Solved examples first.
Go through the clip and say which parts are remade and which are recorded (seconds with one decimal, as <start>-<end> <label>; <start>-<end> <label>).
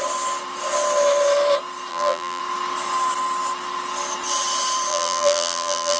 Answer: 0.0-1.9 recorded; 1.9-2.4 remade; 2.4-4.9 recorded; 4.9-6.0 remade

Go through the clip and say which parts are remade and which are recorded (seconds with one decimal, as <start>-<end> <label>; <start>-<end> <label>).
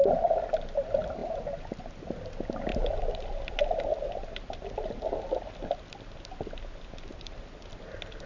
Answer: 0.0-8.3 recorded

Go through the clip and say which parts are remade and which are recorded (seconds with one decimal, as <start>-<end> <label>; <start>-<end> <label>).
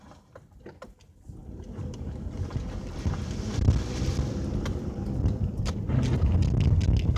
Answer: 0.0-1.4 recorded; 1.4-5.7 remade; 5.7-7.2 recorded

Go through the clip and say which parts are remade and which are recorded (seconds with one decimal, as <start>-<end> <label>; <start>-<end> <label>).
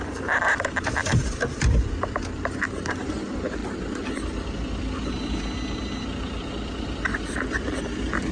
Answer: 0.0-3.6 remade; 3.6-8.3 recorded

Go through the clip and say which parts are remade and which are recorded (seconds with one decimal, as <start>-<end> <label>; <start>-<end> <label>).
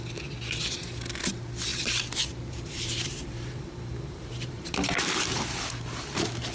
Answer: 0.0-1.7 recorded; 1.7-5.6 remade; 5.6-6.5 recorded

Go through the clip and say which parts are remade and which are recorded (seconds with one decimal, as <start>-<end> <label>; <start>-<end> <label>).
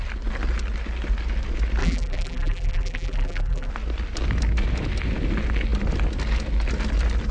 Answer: 0.0-1.8 recorded; 1.8-3.7 remade; 3.7-7.3 recorded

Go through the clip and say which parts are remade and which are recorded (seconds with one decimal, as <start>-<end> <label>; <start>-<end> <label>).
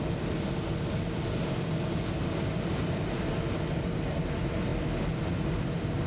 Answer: 0.0-6.1 recorded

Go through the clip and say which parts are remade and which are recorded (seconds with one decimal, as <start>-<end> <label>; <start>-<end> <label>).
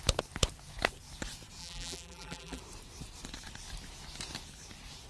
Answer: 0.0-1.6 recorded; 1.6-2.6 remade; 2.6-5.1 recorded